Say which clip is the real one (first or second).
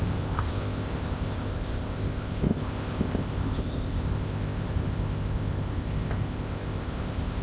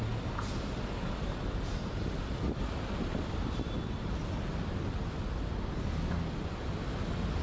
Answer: second